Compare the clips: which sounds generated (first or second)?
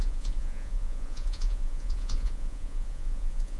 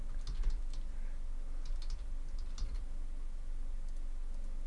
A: first